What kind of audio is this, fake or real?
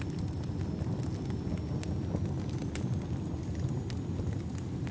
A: real